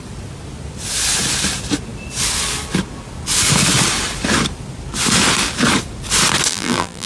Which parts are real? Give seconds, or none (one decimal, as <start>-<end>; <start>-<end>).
0.0-6.5